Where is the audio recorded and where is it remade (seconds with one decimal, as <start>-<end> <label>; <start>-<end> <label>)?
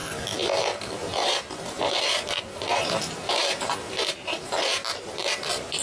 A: 0.0-0.8 recorded; 0.8-5.8 remade